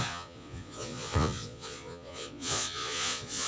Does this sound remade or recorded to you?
remade